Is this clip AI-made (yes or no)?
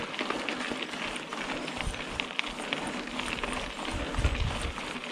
no